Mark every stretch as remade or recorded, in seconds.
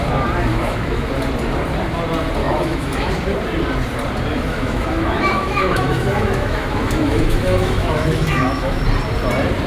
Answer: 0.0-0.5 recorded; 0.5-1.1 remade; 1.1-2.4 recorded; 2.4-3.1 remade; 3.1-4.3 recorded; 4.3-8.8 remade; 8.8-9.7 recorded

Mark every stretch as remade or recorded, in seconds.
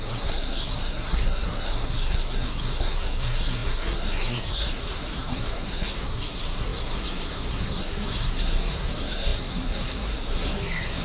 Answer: 0.0-11.0 remade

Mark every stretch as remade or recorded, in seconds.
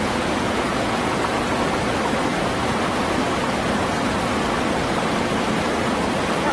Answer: 0.0-1.2 remade; 1.2-6.5 recorded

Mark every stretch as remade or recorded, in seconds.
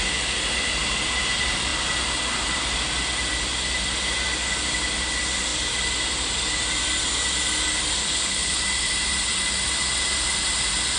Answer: 0.0-8.0 recorded; 8.0-8.6 remade; 8.6-11.0 recorded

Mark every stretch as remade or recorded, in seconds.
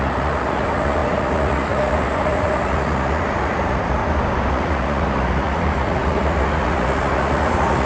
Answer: 0.0-4.0 remade; 4.0-4.5 recorded; 4.5-7.9 remade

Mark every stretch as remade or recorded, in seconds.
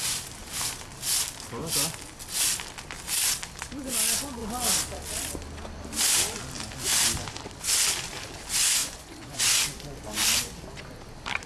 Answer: 0.0-8.8 recorded; 8.8-9.4 remade; 9.4-11.5 recorded